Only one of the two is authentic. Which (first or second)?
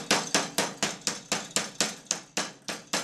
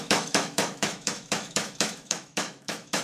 first